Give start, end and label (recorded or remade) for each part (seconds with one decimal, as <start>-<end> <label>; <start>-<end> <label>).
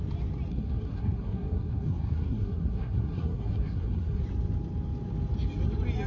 0.0-0.5 recorded; 0.5-4.2 remade; 4.2-6.1 recorded